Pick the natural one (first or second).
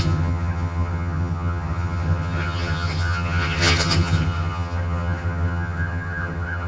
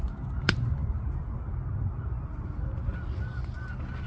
second